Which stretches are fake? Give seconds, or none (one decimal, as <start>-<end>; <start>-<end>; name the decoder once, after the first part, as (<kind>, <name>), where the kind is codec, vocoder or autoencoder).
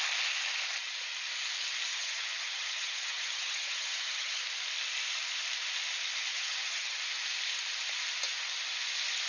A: 1.9-4.4 (vocoder, HiFi-GAN); 6.3-7.0